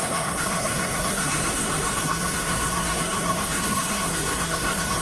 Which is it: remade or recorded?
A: remade